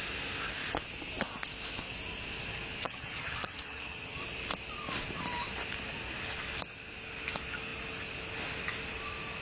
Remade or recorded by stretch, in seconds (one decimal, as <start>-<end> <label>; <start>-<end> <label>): 0.0-2.8 recorded; 2.8-4.2 remade; 4.2-9.4 recorded

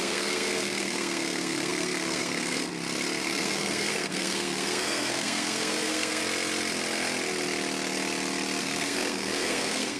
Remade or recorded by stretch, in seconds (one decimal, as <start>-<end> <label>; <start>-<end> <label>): 0.0-2.7 remade; 2.7-3.2 recorded; 3.2-6.2 remade; 6.2-8.6 recorded; 8.6-10.0 remade

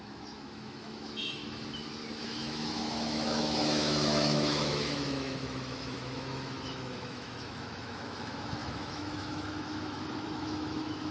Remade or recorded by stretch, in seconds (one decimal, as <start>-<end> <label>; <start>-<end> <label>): 0.0-1.4 remade; 1.4-2.2 recorded; 2.2-11.1 remade

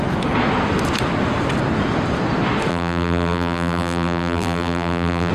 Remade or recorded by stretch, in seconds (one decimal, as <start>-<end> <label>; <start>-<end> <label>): 0.0-2.7 recorded; 2.7-5.3 remade

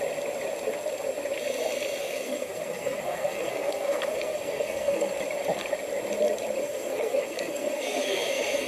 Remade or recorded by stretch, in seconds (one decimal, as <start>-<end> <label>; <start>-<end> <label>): 0.0-2.0 recorded; 2.0-5.1 remade; 5.1-6.6 recorded; 6.6-8.7 remade

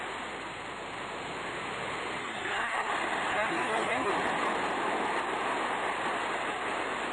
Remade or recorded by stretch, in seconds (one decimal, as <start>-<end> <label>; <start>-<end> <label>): 0.0-2.2 recorded; 2.2-2.9 remade; 2.9-3.3 recorded; 3.3-4.1 remade; 4.1-7.1 recorded

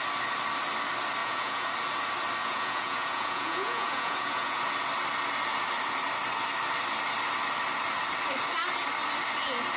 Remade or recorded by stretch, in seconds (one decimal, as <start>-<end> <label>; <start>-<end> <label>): 0.0-1.2 recorded; 1.2-1.7 remade; 1.7-2.4 recorded; 2.4-4.6 remade; 4.6-9.8 recorded

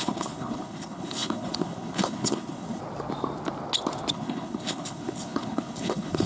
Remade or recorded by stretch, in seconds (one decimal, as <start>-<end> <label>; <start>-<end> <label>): 0.0-2.8 remade; 2.8-4.1 recorded; 4.1-6.3 remade